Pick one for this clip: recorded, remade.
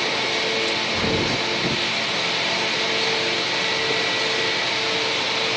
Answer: recorded